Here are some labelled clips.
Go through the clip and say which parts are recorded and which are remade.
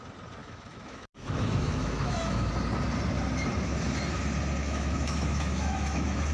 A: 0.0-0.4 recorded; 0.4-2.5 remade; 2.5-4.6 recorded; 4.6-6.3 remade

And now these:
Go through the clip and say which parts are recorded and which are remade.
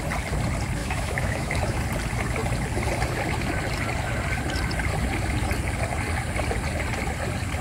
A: 0.0-0.8 recorded; 0.8-1.8 remade; 1.8-7.6 recorded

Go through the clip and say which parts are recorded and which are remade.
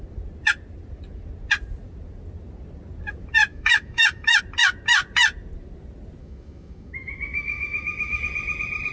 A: 0.0-3.5 recorded; 3.5-4.4 remade; 4.4-6.2 recorded; 6.2-8.2 remade; 8.2-8.9 recorded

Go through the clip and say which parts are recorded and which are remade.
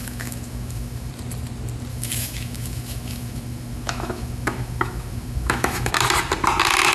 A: 0.0-1.1 remade; 1.1-1.9 recorded; 1.9-5.9 remade; 5.9-6.9 recorded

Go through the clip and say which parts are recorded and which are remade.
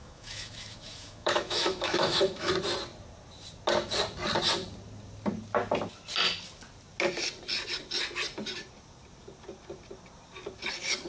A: 0.0-2.5 remade; 2.5-11.1 recorded